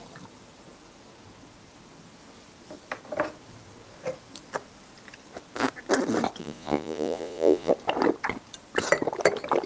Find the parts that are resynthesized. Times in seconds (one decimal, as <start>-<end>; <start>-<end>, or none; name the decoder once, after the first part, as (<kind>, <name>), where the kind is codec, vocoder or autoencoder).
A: 6.4-7.7 (vocoder, Vocos)